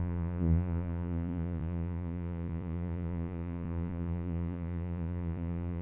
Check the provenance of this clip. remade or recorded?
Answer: remade